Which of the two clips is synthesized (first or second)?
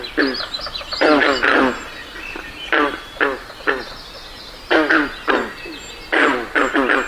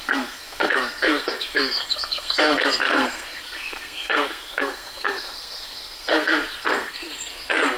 second